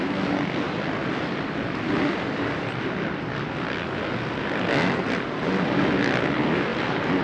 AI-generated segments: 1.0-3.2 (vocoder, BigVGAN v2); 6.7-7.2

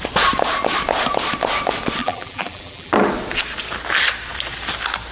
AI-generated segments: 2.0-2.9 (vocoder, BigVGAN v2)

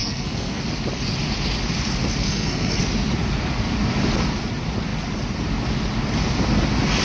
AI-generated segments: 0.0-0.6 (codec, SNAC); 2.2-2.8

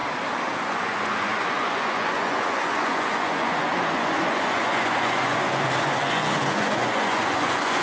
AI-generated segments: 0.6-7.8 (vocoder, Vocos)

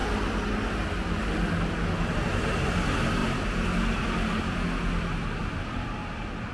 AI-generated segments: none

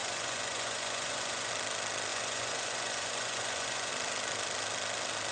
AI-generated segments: 0.0-1.5 (vocoder, Vocos); 2.1-3.9